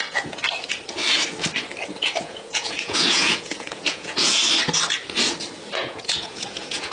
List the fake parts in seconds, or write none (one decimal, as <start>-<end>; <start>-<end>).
0.0-0.4; 2.2-4.4; 5.8-6.9